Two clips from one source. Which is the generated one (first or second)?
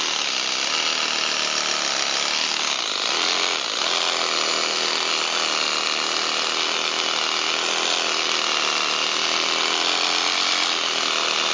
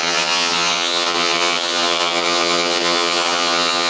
second